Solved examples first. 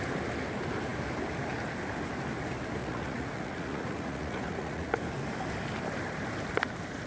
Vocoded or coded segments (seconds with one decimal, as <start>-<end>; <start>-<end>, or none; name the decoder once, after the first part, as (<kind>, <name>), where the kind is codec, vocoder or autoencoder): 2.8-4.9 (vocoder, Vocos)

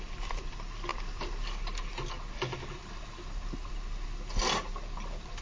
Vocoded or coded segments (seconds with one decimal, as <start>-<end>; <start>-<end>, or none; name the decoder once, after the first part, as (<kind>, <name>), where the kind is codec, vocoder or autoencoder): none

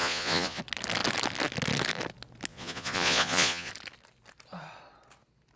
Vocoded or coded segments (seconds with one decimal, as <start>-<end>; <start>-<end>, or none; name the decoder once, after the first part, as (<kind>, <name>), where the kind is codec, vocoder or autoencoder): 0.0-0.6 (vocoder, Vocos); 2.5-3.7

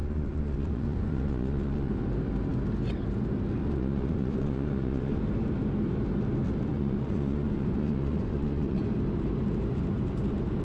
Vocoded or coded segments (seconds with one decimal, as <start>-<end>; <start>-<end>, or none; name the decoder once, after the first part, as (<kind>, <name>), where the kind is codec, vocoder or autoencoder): 0.0-1.9 (vocoder, Vocos); 3.6-5.2; 6.7-8.8